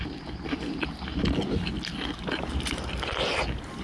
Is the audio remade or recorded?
recorded